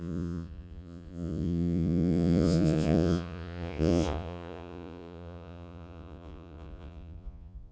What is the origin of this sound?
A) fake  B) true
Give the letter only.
A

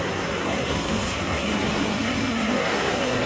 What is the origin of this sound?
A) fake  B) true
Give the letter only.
A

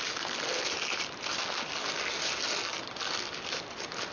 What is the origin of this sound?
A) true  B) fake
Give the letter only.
A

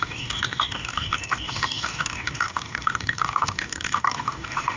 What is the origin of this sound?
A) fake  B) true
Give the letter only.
A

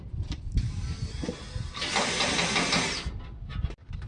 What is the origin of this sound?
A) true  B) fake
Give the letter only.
A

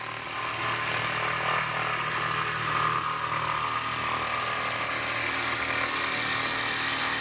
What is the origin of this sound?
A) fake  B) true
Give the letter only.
B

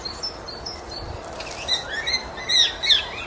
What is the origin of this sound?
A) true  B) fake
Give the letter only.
A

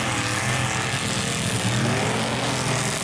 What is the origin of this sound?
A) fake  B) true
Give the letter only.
B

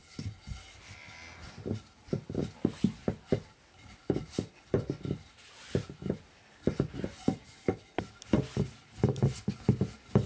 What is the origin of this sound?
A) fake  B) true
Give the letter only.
B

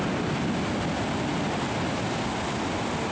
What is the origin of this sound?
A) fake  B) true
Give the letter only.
B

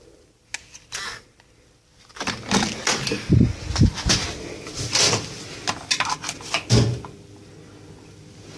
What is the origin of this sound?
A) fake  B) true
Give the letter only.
B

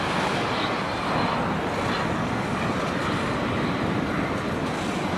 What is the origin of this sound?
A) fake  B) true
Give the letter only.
B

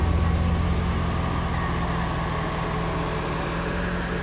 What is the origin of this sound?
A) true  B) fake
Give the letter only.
A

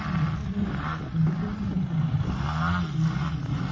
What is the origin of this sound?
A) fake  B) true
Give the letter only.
B